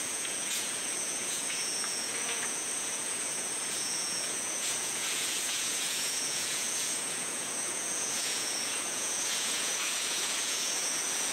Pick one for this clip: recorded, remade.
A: remade